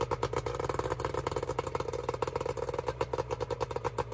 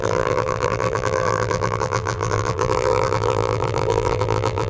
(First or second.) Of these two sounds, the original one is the first